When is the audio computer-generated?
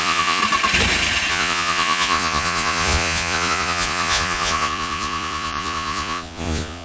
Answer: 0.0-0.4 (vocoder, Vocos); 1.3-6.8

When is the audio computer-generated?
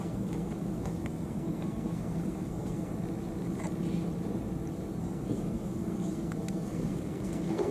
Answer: 0.0-2.9 (codec, SNAC); 5.0-7.7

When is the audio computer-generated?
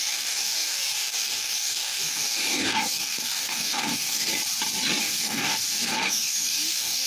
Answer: 0.0-4.3 (codec, DAC); 5.0-7.1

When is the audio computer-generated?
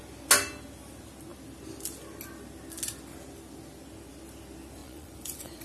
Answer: 4.8-5.6 (vocoder, Vocos)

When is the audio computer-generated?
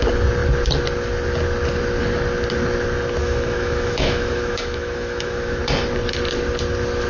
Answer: 3.2-5.6 (autoencoder, DAC-VAE)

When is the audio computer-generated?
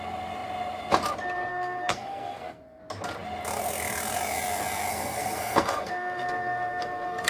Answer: 1.5-2.8 (codec, SNAC); 4.9-7.3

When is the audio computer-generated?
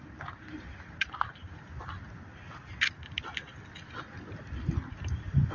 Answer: 0.0-1.7 (vocoder, BigVGAN v2); 4.9-5.5